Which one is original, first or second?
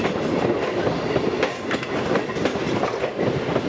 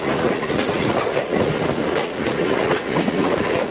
first